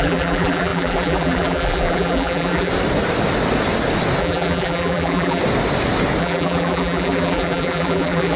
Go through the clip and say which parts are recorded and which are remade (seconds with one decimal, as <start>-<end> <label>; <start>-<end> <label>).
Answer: 0.0-2.7 remade; 2.7-4.2 recorded; 4.2-5.4 remade; 5.4-6.2 recorded; 6.2-8.4 remade